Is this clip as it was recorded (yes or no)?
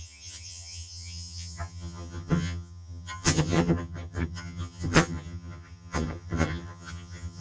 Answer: no